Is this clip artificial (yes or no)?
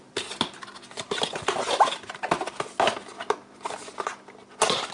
no